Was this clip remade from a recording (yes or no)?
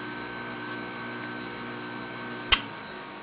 no